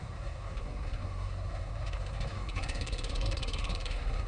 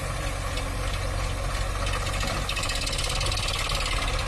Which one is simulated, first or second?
first